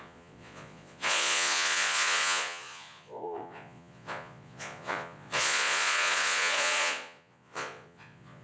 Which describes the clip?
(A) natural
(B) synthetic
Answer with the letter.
B